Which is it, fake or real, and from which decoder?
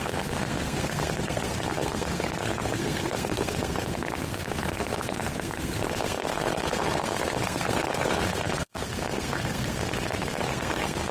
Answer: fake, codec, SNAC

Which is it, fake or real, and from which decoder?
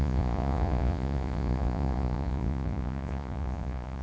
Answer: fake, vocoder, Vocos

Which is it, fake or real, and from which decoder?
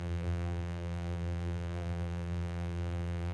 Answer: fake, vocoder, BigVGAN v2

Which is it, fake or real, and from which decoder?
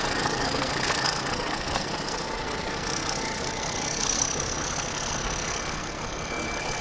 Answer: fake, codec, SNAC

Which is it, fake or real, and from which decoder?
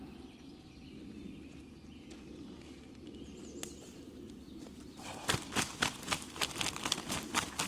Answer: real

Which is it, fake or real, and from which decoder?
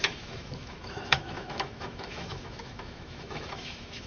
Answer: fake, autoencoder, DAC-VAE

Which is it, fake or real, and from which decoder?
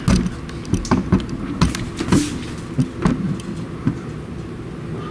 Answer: real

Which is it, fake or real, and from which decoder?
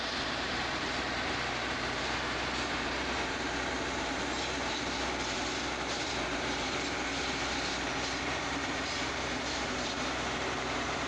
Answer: fake, vocoder, BigVGAN v2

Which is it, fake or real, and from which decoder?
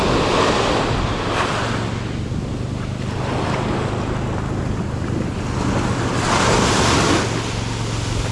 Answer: real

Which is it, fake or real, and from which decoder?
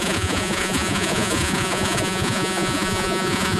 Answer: fake, vocoder, Vocos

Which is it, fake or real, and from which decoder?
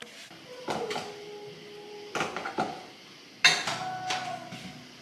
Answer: real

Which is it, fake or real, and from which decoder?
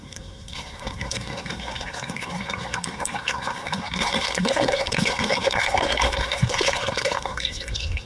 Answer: fake, codec, SNAC